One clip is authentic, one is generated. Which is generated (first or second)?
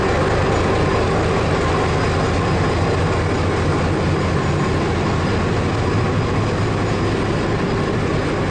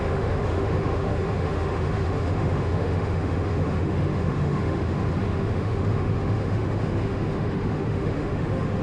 second